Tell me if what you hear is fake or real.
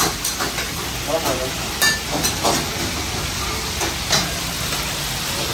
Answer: real